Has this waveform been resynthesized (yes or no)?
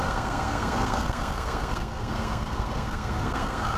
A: yes